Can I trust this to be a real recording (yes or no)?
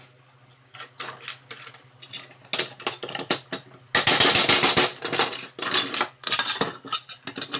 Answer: yes